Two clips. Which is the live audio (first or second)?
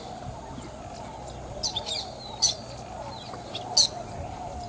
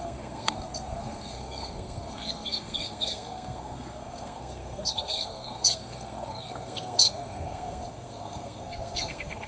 first